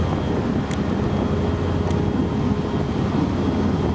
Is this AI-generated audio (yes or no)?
no